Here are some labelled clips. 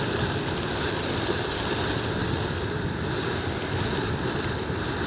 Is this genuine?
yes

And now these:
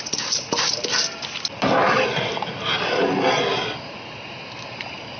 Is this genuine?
yes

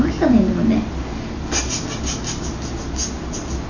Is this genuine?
yes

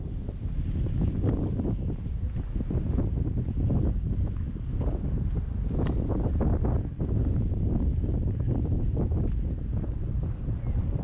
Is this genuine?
yes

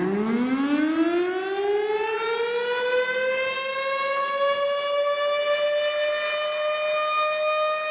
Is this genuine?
yes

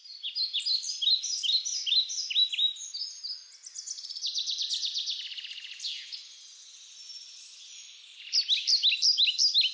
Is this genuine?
yes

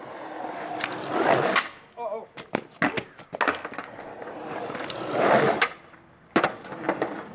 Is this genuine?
yes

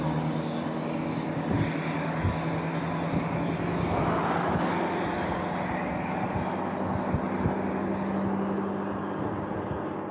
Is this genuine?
yes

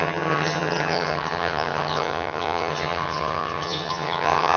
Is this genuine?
no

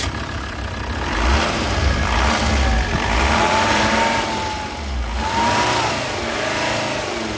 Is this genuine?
yes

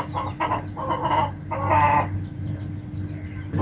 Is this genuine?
yes